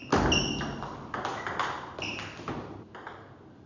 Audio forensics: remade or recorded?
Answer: recorded